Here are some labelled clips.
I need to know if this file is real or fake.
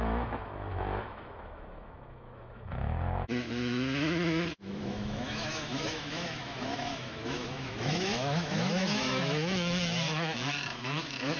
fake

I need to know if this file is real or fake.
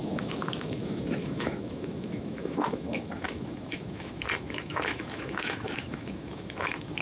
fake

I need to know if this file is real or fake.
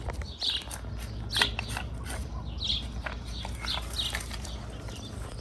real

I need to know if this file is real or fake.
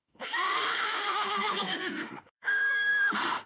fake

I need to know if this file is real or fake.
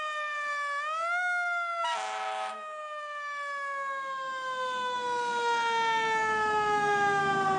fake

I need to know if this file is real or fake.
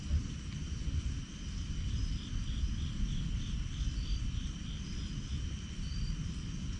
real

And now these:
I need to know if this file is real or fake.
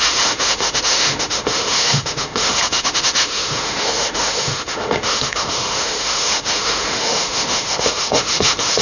fake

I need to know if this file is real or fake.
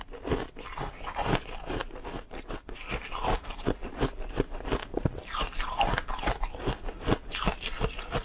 real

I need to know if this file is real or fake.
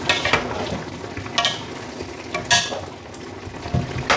real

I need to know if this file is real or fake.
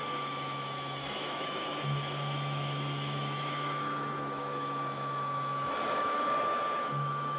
fake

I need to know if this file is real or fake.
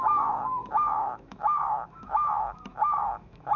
fake